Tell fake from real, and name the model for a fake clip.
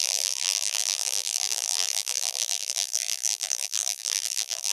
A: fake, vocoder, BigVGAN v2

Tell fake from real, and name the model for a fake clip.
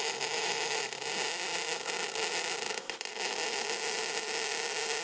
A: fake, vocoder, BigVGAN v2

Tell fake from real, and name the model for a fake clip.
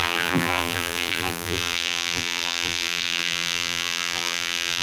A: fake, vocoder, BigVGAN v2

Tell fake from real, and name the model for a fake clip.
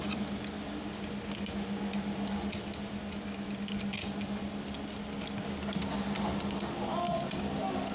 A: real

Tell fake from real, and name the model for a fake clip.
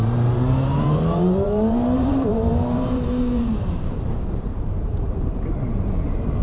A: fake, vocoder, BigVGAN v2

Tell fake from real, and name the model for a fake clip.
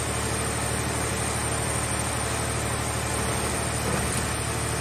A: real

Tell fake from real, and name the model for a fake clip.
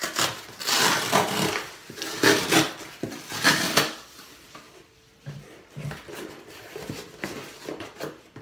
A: fake, vocoder, BigVGAN v2